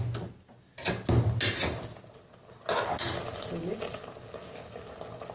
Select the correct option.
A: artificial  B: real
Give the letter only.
B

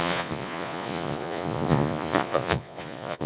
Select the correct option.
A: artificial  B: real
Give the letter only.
A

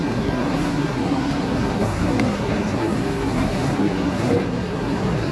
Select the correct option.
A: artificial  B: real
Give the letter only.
A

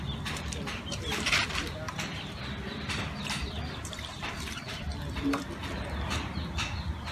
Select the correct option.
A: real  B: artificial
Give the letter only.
B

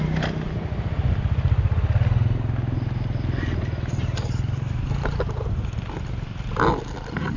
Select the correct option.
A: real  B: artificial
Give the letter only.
A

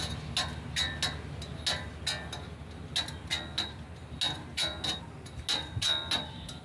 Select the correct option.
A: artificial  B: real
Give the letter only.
B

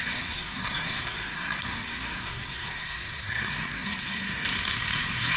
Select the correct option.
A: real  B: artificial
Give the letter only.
B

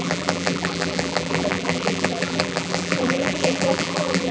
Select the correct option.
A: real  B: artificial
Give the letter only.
B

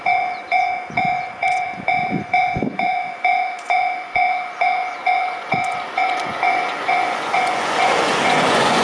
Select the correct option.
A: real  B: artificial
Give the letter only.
B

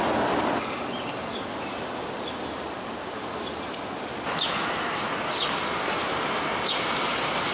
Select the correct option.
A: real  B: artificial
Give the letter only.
A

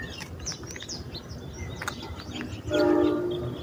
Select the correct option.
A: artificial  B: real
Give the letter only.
B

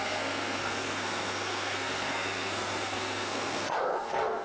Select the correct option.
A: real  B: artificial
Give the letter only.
B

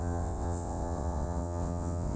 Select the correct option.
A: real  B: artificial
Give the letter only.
B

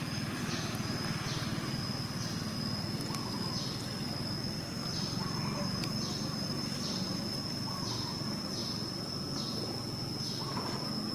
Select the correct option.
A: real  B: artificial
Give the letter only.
A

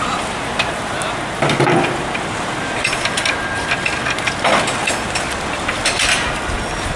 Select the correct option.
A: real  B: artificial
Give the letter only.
A